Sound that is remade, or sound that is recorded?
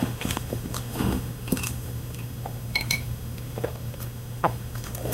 remade